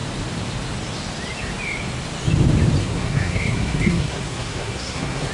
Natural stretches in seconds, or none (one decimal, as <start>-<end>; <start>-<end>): 0.0-2.8